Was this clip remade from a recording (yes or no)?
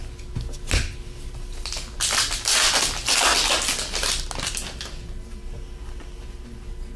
no